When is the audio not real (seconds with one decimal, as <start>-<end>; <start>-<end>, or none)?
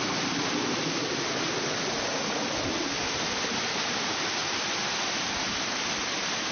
4.4-5.8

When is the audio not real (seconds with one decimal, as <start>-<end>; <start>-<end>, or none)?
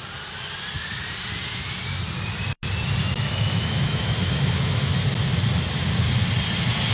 3.0-5.0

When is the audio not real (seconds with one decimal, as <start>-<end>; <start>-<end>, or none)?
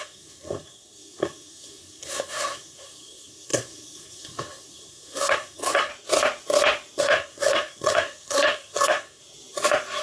0.0-5.9; 7.0-9.2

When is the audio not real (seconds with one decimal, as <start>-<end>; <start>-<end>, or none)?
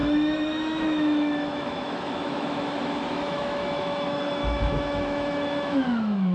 0.0-6.3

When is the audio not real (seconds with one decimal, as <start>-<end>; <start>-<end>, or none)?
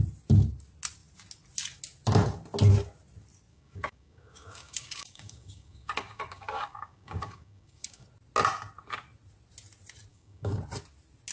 3.5-8.1; 10.1-10.6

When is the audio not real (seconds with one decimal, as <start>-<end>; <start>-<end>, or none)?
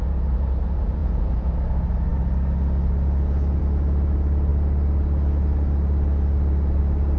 1.0-1.5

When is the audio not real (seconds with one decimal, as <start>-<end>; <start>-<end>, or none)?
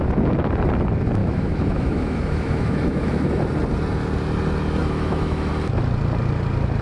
1.2-3.4; 4.8-5.5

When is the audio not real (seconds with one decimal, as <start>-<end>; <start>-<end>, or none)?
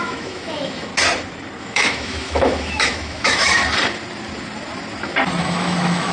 0.0-0.9; 1.6-3.6; 5.4-6.1